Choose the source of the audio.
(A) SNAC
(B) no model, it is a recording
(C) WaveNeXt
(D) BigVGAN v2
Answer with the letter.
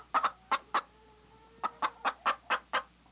B